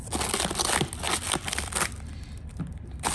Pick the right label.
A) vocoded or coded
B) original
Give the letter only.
B